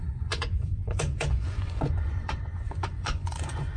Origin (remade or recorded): remade